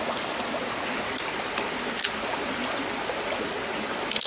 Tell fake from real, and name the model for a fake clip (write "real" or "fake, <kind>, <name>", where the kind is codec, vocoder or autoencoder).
real